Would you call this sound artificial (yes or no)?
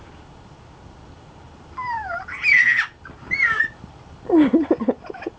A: no